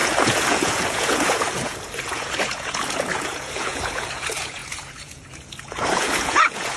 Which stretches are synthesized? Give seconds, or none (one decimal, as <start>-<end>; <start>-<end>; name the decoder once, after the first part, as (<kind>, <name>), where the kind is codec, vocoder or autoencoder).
0.0-6.8 (vocoder, Vocos)